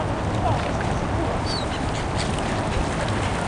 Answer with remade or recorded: recorded